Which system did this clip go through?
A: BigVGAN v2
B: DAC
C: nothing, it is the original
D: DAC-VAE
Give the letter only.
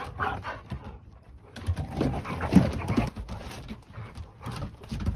C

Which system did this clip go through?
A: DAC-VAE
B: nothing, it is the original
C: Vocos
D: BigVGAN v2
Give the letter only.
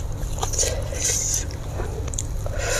D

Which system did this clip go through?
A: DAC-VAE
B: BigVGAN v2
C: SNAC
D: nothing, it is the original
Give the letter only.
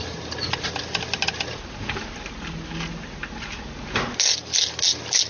D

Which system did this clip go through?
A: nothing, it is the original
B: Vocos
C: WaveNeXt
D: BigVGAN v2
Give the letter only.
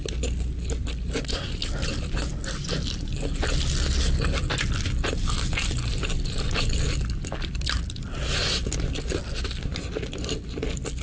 A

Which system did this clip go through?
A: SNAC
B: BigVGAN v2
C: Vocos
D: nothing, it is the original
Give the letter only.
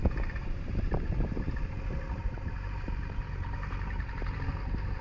B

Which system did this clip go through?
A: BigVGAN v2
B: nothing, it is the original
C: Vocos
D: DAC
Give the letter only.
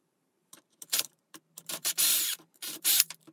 A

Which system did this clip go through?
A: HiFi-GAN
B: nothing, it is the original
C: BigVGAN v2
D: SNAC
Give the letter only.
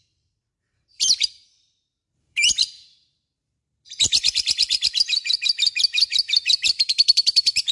C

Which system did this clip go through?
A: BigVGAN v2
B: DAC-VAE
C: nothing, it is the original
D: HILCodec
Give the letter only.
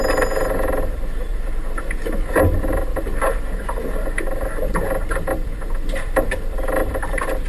A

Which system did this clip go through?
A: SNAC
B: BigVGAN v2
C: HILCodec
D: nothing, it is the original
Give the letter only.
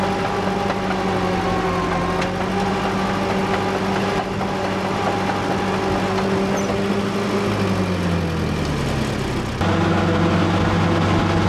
D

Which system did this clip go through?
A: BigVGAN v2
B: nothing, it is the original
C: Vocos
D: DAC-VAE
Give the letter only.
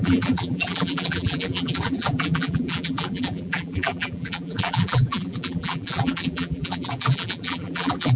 A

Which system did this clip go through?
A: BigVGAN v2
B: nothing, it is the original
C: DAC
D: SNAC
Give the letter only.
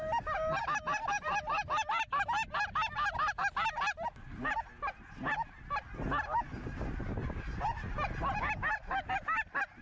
B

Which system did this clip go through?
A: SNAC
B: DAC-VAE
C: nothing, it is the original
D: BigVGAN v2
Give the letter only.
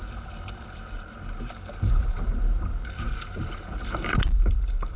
D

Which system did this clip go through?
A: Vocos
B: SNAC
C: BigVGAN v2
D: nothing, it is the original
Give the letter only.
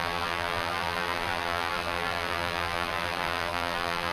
C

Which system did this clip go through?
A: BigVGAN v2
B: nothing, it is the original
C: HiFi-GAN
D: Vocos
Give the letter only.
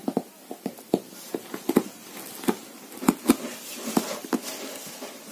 B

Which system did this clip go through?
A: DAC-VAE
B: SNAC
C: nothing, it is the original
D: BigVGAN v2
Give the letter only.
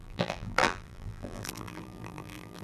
D